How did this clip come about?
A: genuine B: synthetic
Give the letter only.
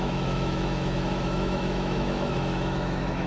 B